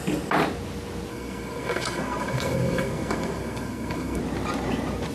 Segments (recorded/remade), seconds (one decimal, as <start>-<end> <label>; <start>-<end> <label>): 0.0-1.1 recorded; 1.1-4.2 remade; 4.2-5.1 recorded